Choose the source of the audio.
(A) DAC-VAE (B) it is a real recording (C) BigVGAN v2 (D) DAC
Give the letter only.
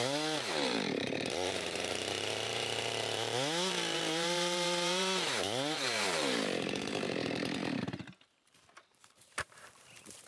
C